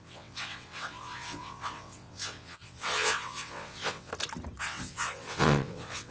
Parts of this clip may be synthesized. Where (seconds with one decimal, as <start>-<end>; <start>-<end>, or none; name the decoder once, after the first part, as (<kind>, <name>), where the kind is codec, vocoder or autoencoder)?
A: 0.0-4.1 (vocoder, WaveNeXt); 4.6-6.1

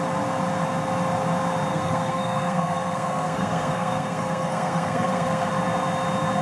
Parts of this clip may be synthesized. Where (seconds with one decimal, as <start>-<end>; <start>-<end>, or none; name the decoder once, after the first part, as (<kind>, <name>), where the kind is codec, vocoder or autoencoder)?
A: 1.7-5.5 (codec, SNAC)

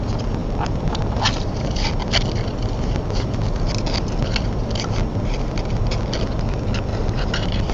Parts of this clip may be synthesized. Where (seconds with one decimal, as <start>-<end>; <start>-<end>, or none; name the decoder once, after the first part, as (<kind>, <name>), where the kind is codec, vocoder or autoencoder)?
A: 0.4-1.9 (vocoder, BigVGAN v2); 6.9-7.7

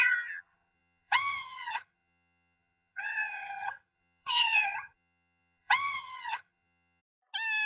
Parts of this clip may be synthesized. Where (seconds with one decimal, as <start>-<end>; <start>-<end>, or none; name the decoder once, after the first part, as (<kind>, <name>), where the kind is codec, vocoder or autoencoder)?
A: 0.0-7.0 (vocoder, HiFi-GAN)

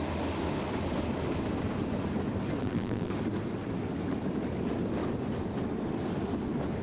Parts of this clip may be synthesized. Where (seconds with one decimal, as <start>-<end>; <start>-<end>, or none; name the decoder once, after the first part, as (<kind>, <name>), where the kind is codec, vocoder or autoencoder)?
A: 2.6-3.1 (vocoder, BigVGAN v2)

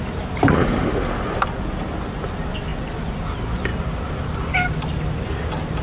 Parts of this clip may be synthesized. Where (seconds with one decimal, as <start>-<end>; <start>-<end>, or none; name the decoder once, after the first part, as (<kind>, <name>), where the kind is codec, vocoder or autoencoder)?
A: none

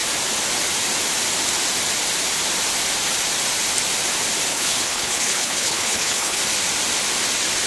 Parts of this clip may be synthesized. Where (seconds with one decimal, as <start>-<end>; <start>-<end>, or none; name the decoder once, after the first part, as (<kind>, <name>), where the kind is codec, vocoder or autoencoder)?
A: 4.5-6.4 (codec, HILCodec)

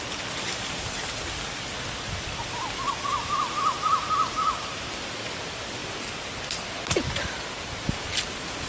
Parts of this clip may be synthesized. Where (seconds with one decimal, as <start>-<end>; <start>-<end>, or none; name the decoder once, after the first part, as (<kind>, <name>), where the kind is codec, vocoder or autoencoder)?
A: none